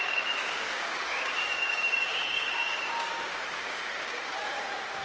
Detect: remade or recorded remade